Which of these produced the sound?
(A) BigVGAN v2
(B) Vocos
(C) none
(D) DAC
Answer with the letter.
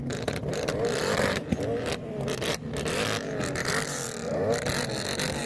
C